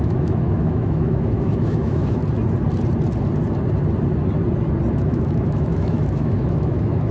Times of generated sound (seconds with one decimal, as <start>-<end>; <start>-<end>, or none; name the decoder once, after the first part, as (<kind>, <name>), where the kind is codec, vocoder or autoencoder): 0.0-2.2 (autoencoder, DAC-VAE); 4.9-7.1